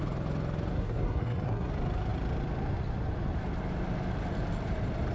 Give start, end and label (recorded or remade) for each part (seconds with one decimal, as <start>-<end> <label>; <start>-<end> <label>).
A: 0.0-0.7 recorded; 0.7-1.7 remade; 1.7-5.1 recorded